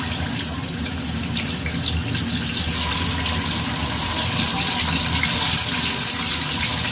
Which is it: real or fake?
real